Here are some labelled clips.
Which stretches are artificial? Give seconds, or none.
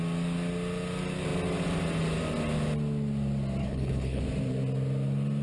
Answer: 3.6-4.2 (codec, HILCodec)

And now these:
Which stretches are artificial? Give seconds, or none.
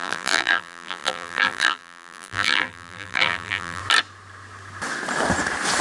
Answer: 0.0-3.8 (vocoder, BigVGAN v2)